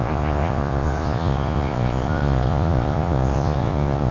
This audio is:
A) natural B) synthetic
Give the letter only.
B